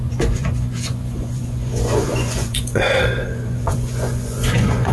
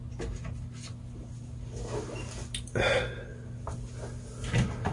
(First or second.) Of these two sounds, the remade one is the first